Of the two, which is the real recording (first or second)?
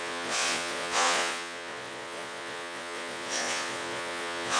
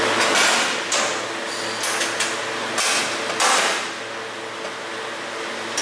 second